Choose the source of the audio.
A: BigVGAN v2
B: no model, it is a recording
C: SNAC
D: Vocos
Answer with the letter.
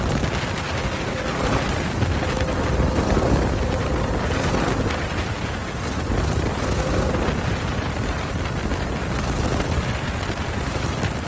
B